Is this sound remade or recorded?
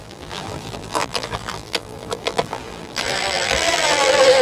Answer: remade